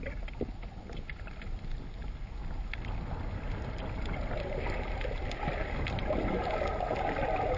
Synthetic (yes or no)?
no